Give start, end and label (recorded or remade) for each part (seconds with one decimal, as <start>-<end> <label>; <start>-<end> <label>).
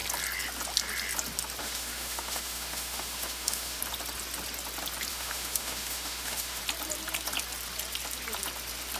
0.0-1.6 recorded; 1.6-3.8 remade; 3.8-5.1 recorded; 5.1-6.6 remade; 6.6-9.0 recorded